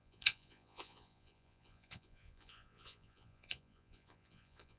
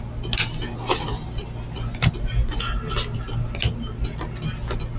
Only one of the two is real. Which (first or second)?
second